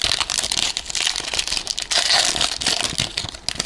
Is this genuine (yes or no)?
yes